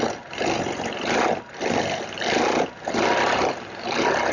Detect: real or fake real